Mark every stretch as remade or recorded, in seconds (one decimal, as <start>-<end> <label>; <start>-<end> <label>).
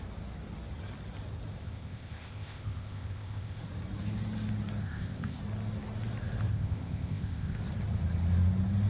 0.0-1.6 recorded; 1.6-3.6 remade; 3.6-4.8 recorded; 4.8-5.4 remade; 5.4-6.5 recorded; 6.5-7.6 remade; 7.6-8.9 recorded